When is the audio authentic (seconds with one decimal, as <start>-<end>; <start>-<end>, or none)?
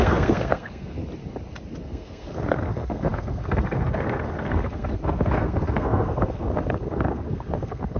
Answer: 1.0-1.8